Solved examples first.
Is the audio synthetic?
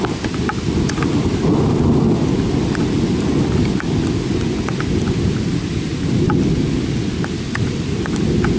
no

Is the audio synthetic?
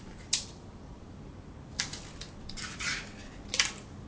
no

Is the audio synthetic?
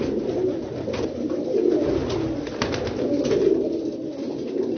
no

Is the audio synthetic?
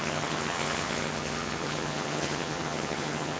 yes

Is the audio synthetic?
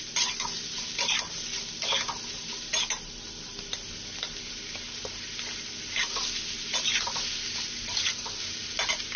no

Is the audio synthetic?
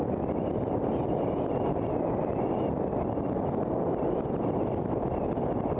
no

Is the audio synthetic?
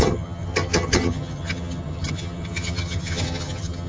yes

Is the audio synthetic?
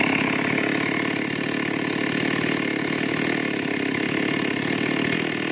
no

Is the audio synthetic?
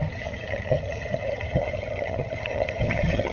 yes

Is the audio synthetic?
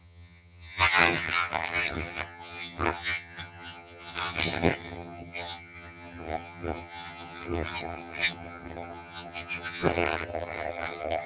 yes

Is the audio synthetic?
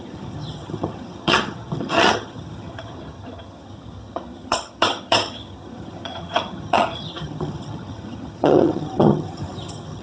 yes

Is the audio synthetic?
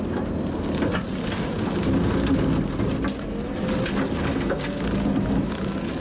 no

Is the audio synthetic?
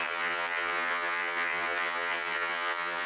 yes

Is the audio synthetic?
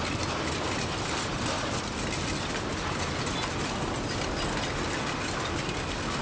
no